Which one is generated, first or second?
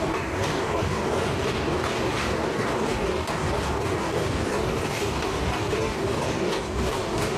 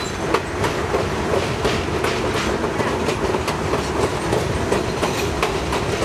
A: first